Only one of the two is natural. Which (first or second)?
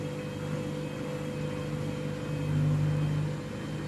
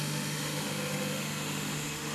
first